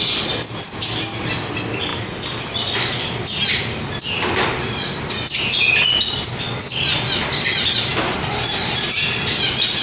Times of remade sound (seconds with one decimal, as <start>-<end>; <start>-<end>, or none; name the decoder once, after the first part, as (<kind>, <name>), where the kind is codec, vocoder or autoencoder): none